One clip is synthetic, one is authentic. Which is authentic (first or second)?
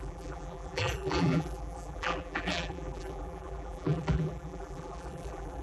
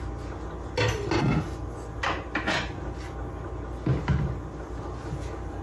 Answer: second